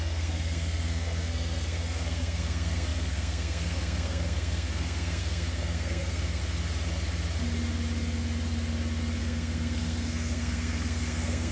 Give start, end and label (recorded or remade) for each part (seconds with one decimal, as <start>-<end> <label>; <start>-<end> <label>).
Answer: 0.0-6.4 remade; 6.4-9.2 recorded; 9.2-11.5 remade